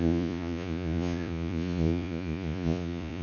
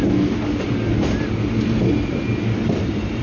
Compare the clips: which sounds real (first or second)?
second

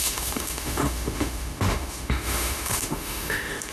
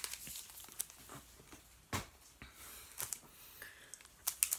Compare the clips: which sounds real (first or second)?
second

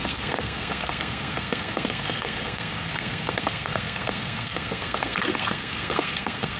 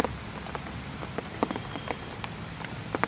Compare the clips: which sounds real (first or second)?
second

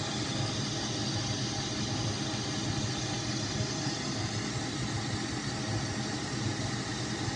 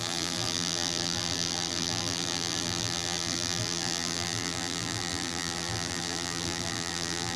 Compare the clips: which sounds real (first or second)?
first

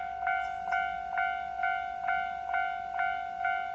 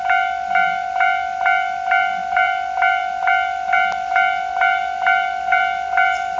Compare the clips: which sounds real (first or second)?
first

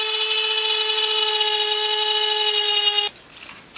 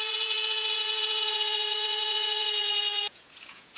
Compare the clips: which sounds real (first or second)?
first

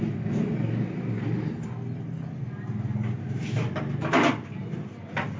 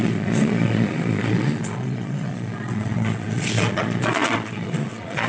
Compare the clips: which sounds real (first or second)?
first